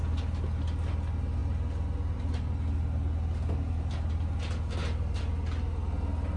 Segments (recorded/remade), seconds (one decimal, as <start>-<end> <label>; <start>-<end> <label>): 0.0-6.4 recorded